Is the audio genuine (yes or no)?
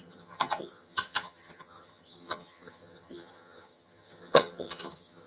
no